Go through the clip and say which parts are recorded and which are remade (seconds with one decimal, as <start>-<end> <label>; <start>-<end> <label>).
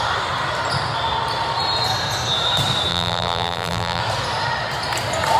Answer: 0.0-2.9 recorded; 2.9-4.0 remade; 4.0-5.4 recorded